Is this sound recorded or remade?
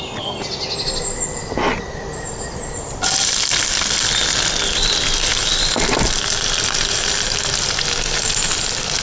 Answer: recorded